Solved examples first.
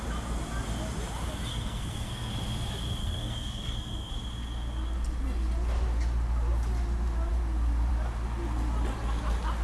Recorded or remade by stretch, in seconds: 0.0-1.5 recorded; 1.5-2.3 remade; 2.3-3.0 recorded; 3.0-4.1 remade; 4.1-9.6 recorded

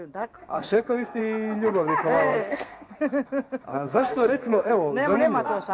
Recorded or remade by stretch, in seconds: 0.0-0.4 recorded; 0.4-1.2 remade; 1.2-2.3 recorded; 2.3-2.9 remade; 2.9-3.7 recorded; 3.7-4.7 remade; 4.7-5.7 recorded

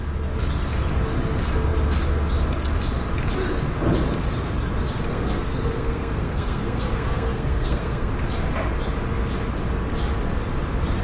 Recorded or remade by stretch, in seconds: 0.0-5.1 recorded; 5.1-8.1 remade; 8.1-11.0 recorded

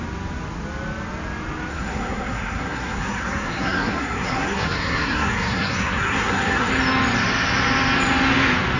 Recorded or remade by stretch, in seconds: 0.0-1.7 recorded; 1.7-6.7 remade; 6.7-8.8 recorded